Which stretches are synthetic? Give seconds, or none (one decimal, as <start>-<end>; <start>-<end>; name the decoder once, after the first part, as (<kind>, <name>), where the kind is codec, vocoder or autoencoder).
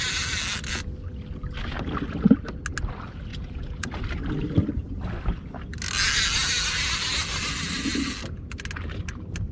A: 3.3-3.9 (vocoder, Vocos)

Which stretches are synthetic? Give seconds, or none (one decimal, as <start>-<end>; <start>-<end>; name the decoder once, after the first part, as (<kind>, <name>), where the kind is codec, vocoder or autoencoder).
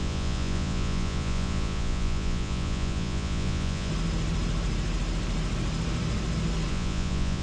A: 0.0-3.9 (vocoder, Vocos); 6.7-7.4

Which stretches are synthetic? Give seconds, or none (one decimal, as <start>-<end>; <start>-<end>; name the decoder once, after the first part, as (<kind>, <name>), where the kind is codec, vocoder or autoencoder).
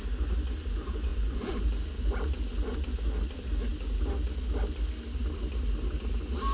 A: 1.1-1.6 (vocoder, Vocos)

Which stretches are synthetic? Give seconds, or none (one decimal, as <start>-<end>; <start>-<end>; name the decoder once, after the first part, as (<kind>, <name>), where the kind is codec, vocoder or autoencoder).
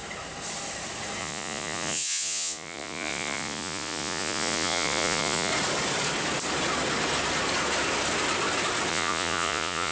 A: 1.2-5.5 (vocoder, Vocos); 8.9-9.9